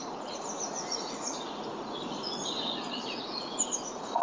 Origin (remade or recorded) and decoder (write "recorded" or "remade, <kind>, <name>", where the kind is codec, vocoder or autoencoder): remade, vocoder, Vocos